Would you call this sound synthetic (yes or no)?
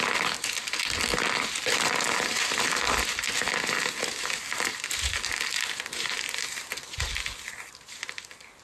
no